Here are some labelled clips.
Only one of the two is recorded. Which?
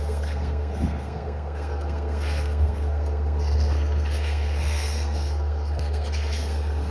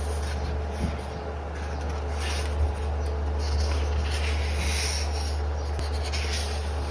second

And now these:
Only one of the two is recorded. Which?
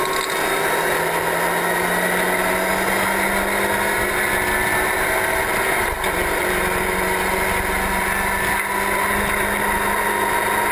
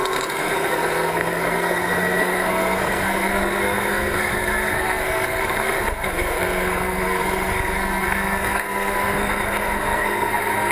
first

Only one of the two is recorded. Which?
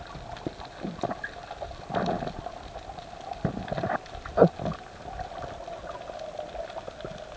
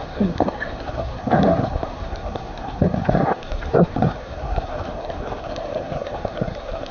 first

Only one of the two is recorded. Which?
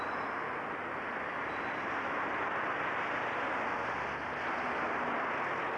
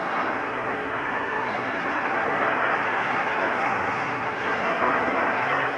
first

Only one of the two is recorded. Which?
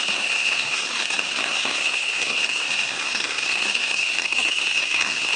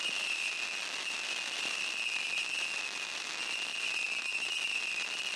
second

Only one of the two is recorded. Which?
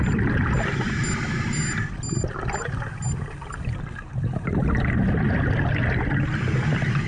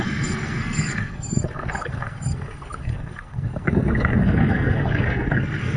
first